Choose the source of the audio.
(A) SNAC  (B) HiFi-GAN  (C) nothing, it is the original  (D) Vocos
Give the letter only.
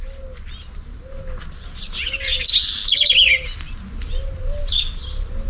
C